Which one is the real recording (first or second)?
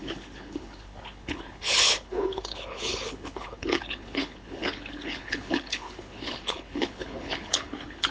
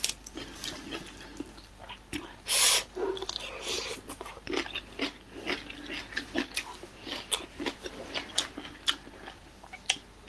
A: second